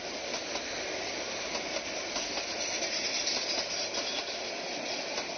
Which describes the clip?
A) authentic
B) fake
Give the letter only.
A